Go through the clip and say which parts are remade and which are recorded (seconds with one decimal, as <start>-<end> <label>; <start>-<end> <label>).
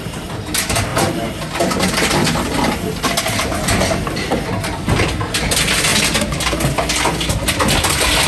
0.0-8.3 recorded